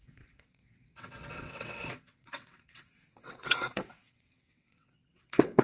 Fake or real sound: fake